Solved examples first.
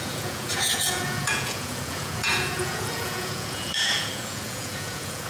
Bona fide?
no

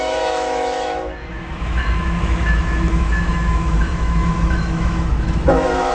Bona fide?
no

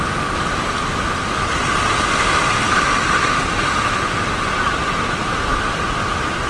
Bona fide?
yes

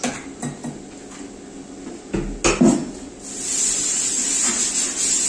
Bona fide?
yes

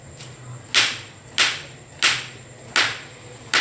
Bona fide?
yes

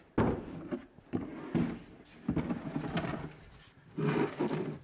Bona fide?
yes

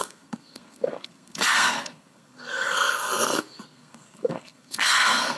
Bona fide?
no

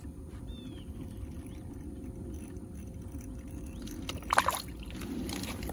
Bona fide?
yes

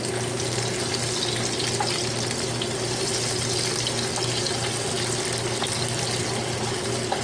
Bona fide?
yes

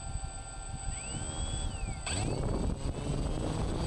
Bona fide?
yes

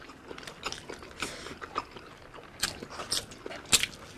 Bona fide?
yes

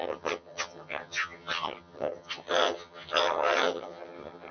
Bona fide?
no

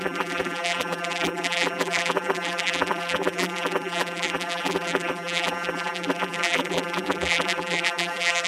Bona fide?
no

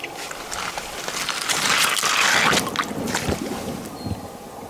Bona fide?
yes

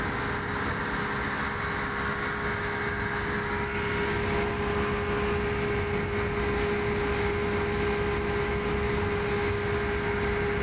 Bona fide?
yes